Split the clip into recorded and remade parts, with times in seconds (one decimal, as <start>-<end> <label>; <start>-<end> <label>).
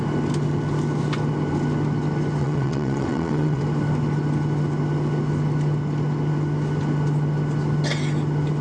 0.0-2.4 recorded; 2.4-3.6 remade; 3.6-8.6 recorded